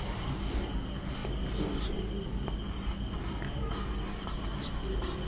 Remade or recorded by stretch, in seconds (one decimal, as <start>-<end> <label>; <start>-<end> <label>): 0.0-5.3 recorded